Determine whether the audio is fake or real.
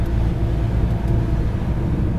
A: real